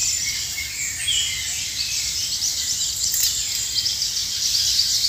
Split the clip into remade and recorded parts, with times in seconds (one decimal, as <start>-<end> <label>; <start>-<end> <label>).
0.0-3.1 remade; 3.1-5.1 recorded